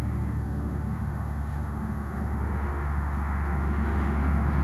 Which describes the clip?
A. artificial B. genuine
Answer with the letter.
A